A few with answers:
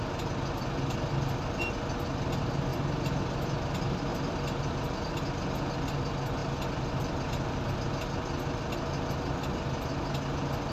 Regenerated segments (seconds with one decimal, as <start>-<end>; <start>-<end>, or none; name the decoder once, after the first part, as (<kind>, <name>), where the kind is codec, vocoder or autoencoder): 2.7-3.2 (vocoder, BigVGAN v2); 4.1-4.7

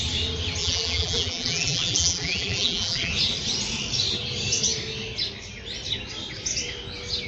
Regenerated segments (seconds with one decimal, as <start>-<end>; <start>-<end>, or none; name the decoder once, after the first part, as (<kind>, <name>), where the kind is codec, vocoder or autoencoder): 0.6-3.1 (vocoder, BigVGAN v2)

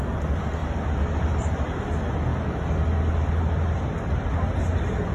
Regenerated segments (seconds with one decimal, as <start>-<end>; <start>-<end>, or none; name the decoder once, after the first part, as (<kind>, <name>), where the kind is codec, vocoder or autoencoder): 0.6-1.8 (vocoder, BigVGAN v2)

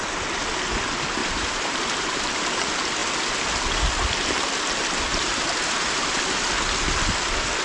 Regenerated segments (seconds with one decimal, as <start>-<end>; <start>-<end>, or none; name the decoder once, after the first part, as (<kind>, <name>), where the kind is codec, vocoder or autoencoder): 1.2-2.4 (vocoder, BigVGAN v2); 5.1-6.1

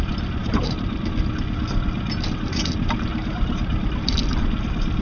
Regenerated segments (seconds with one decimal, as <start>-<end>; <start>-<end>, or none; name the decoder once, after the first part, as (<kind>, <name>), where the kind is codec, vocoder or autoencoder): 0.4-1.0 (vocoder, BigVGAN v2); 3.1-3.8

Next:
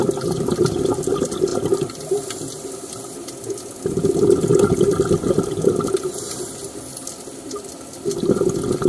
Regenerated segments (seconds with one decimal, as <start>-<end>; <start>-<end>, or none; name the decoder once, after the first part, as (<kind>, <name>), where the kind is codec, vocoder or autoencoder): none

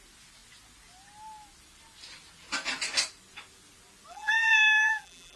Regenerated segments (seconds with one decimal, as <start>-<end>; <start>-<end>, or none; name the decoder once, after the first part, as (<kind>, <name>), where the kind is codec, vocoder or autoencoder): 4.1-5.4 (vocoder, BigVGAN v2)